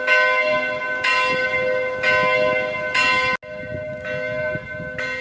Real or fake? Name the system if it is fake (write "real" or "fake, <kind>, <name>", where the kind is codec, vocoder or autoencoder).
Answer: real